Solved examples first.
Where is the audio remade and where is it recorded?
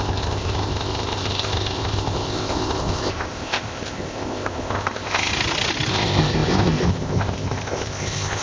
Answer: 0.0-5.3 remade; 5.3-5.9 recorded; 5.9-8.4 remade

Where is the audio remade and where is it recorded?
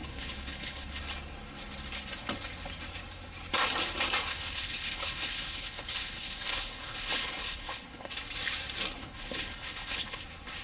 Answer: 0.0-1.0 remade; 1.0-4.3 recorded; 4.3-8.1 remade; 8.1-9.0 recorded; 9.0-10.2 remade; 10.2-10.6 recorded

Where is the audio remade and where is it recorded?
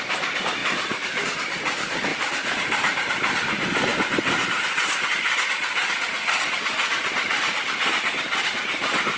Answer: 0.0-0.6 recorded; 0.6-1.2 remade; 1.2-2.1 recorded; 2.1-5.1 remade; 5.1-7.0 recorded; 7.0-7.8 remade; 7.8-9.2 recorded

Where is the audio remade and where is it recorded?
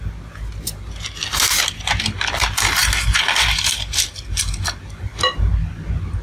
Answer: 0.0-6.2 recorded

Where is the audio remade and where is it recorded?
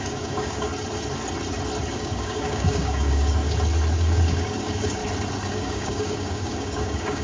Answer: 0.0-0.7 remade; 0.7-1.9 recorded; 1.9-3.4 remade; 3.4-4.0 recorded; 4.0-5.0 remade; 5.0-5.5 recorded; 5.5-7.2 remade